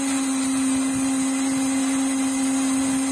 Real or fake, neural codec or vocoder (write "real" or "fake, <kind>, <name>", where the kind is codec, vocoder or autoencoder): real